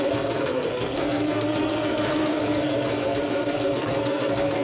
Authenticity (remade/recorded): remade